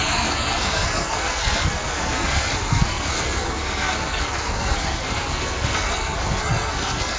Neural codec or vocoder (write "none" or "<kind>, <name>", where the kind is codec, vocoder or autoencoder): codec, SNAC